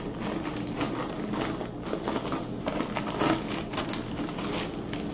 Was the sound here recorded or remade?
recorded